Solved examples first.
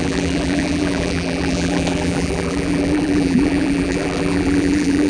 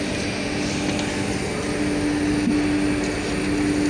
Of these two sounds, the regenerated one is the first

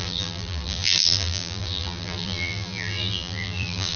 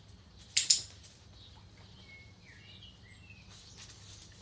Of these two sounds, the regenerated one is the first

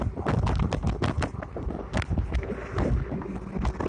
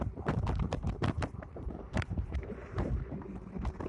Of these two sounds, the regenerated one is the second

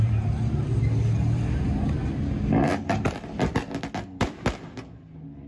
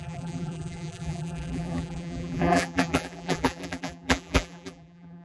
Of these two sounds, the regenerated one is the second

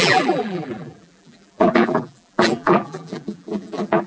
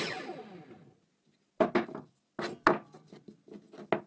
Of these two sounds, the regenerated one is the first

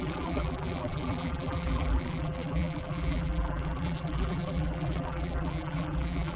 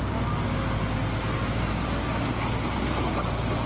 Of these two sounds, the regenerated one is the first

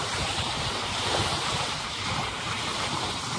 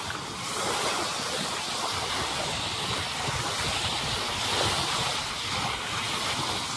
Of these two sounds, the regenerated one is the first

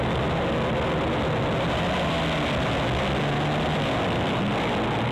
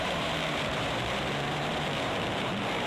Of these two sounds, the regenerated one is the second